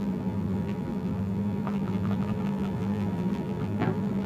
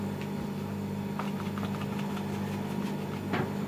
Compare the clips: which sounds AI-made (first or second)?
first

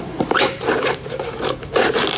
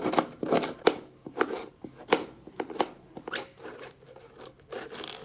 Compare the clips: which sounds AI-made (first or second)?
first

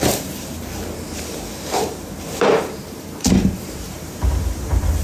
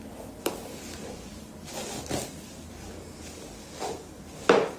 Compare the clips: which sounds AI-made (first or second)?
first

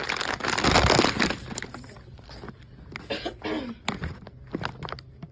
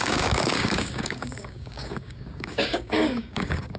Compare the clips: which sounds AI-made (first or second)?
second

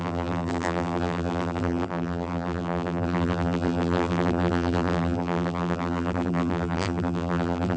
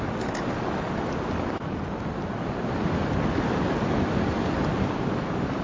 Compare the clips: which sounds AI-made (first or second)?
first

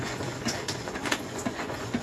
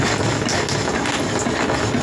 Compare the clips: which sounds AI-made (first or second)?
first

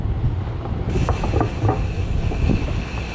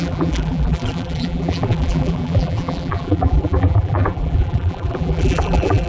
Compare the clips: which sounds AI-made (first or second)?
second